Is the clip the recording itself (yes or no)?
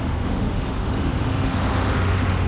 no